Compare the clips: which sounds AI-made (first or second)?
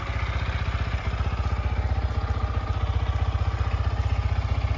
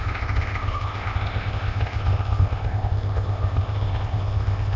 second